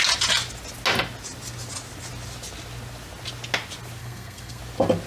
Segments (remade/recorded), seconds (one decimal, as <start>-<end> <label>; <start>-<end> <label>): 0.0-4.0 recorded; 4.0-4.6 remade; 4.6-5.1 recorded